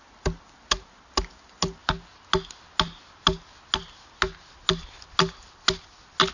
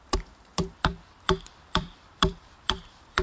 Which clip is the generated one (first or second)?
second